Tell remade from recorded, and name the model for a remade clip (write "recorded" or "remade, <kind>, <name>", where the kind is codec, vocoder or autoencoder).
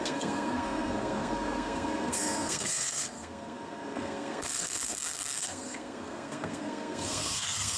remade, codec, SNAC